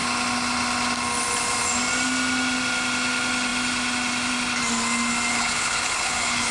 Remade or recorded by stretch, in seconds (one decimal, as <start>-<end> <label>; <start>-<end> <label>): 0.0-5.3 recorded; 5.3-6.5 remade